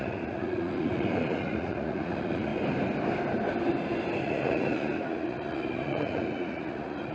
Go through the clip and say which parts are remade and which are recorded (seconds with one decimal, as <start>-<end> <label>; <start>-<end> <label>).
0.0-2.5 remade; 2.5-4.2 recorded; 4.2-7.1 remade